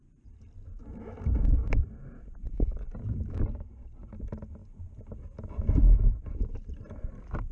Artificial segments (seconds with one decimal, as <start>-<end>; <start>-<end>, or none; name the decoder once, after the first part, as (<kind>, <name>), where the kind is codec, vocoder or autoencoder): none